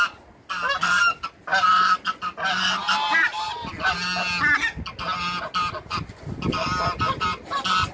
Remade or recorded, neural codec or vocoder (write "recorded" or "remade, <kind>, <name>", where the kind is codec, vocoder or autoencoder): recorded